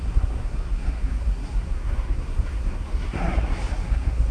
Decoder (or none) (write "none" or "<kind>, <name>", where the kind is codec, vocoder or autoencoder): codec, SNAC